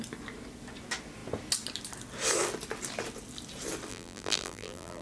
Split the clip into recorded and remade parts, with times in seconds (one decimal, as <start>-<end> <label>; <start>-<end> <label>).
0.0-3.9 recorded; 3.9-5.0 remade

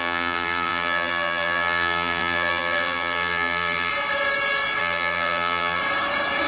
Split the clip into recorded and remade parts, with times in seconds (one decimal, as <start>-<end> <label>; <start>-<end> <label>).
0.0-3.9 remade; 3.9-4.8 recorded; 4.8-5.8 remade; 5.8-6.5 recorded

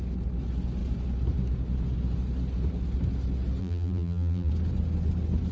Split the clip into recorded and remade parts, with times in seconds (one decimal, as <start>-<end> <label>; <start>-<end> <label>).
0.0-3.6 recorded; 3.6-4.5 remade; 4.5-5.5 recorded

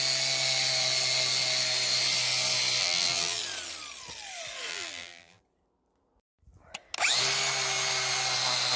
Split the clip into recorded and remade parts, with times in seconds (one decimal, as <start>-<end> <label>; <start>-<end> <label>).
0.0-2.8 recorded; 2.8-3.4 remade; 3.4-4.7 recorded; 4.7-5.4 remade; 5.4-8.8 recorded

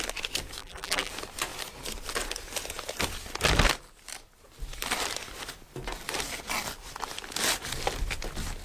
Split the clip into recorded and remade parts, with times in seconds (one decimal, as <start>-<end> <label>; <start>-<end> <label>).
0.0-0.6 recorded; 0.6-1.1 remade; 1.1-8.6 recorded

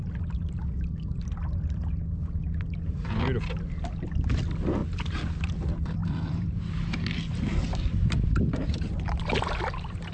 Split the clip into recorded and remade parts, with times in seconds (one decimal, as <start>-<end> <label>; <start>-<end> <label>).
0.0-1.8 remade; 1.8-4.3 recorded; 4.3-4.8 remade; 4.8-5.4 recorded; 5.4-10.1 remade

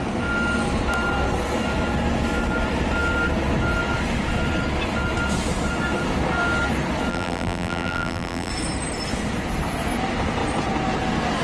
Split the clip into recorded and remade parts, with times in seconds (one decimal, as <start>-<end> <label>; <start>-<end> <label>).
0.0-7.1 recorded; 7.1-8.5 remade; 8.5-11.4 recorded

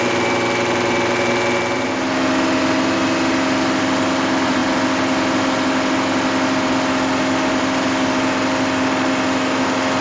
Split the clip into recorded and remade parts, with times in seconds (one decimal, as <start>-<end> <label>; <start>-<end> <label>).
0.0-10.0 recorded